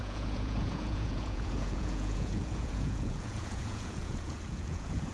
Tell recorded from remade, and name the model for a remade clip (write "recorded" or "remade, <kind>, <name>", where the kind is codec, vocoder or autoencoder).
remade, vocoder, Vocos